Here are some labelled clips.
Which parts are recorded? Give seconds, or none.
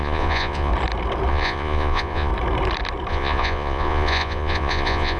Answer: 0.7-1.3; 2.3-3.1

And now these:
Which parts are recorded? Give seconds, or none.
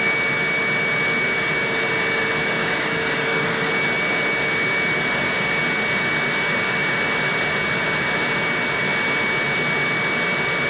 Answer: 0.0-2.6; 3.7-10.7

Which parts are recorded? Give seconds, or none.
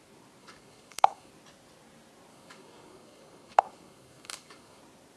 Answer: 0.0-0.4; 1.3-2.3; 4.8-5.2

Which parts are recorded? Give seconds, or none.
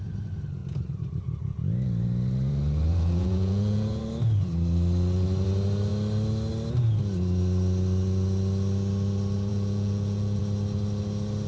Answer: 0.0-2.9; 4.0-9.5; 10.4-11.5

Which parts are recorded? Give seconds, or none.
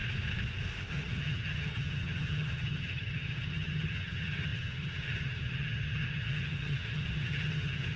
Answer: 0.0-0.9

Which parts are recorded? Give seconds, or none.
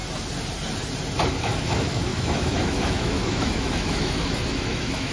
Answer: 0.0-1.3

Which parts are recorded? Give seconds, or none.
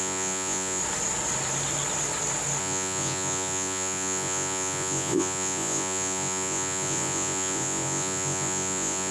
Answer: 0.8-2.6